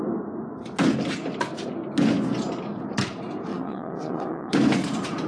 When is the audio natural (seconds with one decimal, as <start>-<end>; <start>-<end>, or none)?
0.0-3.5; 4.5-5.3